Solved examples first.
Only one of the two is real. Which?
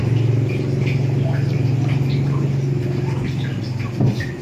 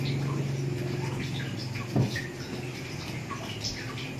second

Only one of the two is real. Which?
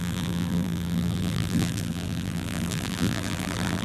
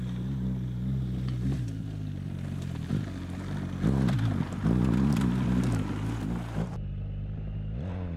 second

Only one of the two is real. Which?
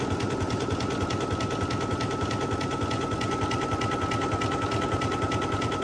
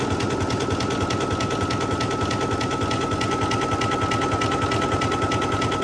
second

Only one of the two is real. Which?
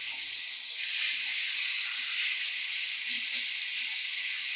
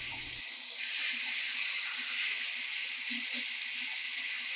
second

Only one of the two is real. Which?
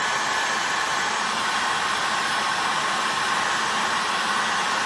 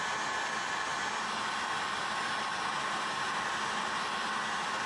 second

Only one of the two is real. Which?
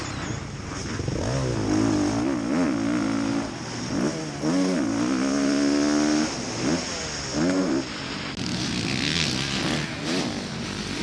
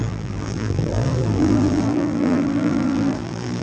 first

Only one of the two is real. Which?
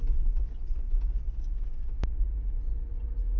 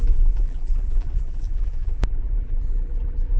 first